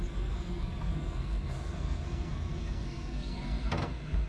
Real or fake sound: fake